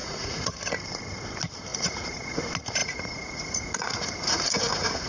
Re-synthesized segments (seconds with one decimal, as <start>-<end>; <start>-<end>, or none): 0.0-0.6; 1.7-2.4; 2.8-5.1